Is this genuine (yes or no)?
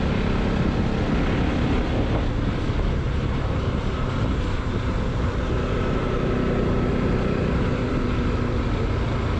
yes